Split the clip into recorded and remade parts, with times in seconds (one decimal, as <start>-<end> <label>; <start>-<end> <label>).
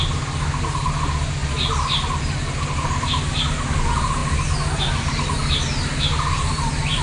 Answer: 0.0-7.0 recorded